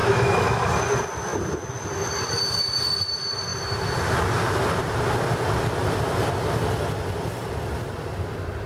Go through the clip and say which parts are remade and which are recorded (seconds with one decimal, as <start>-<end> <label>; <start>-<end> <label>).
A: 0.0-0.7 remade; 0.7-8.7 recorded